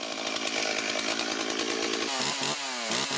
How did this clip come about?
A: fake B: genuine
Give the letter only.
B